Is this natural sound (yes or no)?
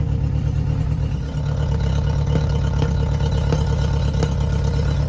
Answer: yes